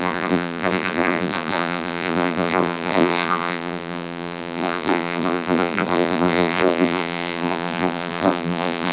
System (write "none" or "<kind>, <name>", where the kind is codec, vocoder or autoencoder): vocoder, BigVGAN v2